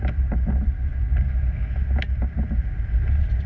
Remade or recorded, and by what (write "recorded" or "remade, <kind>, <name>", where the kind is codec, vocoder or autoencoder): recorded